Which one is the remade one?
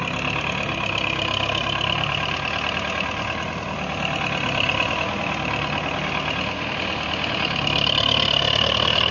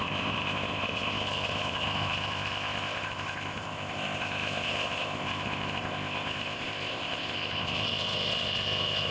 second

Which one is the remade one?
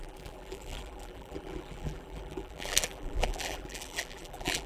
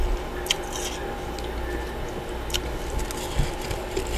first